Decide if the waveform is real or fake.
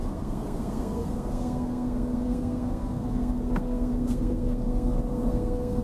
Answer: fake